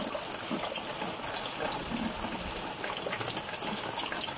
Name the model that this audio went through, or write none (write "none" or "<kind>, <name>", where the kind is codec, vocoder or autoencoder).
none